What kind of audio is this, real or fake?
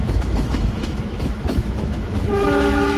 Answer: fake